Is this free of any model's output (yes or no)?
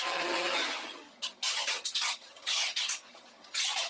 no